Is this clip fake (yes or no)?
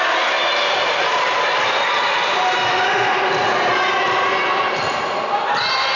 no